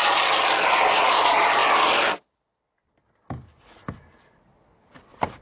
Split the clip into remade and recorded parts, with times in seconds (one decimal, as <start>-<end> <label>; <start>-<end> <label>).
0.0-0.7 recorded; 0.7-1.6 remade; 1.6-4.8 recorded; 4.8-5.4 remade

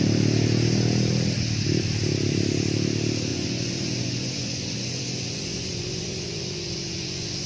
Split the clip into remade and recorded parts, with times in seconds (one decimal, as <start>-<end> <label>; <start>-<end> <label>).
0.0-3.3 recorded; 3.3-7.5 remade

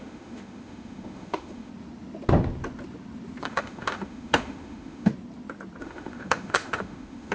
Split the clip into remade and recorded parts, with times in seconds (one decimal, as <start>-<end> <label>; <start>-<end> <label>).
0.0-1.7 remade; 1.7-3.4 recorded; 3.4-5.1 remade; 5.1-5.8 recorded; 5.8-7.3 remade

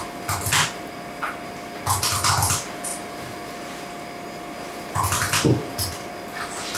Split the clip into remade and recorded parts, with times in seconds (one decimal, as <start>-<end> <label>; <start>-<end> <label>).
0.0-6.8 recorded

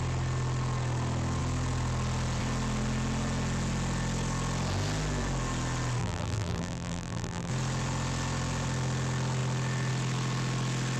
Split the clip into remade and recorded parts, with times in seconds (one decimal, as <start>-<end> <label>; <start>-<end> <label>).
0.0-6.0 recorded; 6.0-7.5 remade; 7.5-11.0 recorded

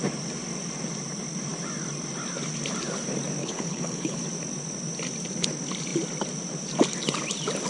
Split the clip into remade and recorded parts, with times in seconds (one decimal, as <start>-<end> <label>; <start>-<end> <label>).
0.0-3.4 recorded; 3.4-4.2 remade; 4.2-7.7 recorded

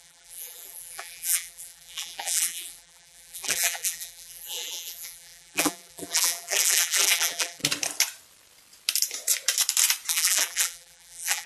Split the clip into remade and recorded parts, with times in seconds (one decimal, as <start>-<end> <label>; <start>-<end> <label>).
0.0-7.6 remade; 7.6-10.1 recorded; 10.1-11.5 remade

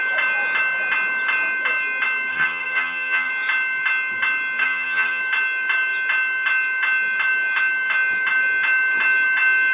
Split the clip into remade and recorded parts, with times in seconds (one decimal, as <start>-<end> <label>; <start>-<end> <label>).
0.0-2.3 recorded; 2.3-3.3 remade; 3.3-4.6 recorded; 4.6-5.2 remade; 5.2-9.7 recorded